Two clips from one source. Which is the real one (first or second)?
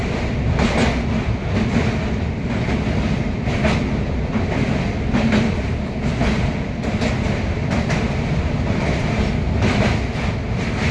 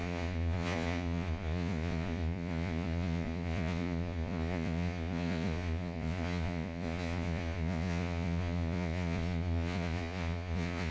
first